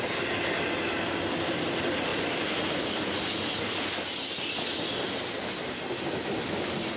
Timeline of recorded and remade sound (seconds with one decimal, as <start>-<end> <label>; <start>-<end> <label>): 0.0-7.0 recorded